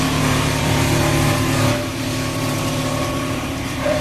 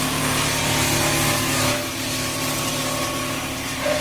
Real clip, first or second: second